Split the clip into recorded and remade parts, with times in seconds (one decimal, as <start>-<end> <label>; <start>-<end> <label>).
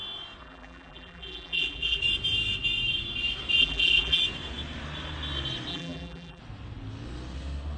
0.0-0.4 recorded; 0.4-2.0 remade; 2.0-3.6 recorded; 3.6-4.2 remade; 4.2-5.7 recorded; 5.7-6.4 remade; 6.4-7.8 recorded